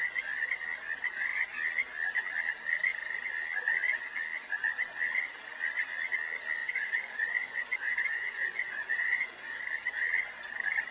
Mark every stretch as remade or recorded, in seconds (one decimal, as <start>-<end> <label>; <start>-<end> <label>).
0.0-6.6 recorded; 6.6-9.6 remade; 9.6-10.9 recorded